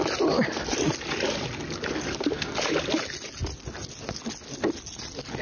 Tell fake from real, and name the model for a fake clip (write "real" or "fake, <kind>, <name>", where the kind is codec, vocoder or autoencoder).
real